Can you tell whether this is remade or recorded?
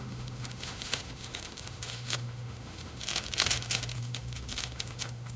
remade